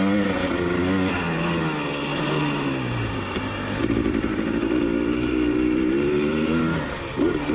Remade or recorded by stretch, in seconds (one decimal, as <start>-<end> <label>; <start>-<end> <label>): 0.0-2.1 recorded; 2.1-6.6 remade; 6.6-7.5 recorded